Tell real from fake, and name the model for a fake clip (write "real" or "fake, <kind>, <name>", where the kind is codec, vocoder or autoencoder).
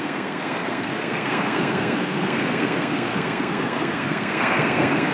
fake, codec, SNAC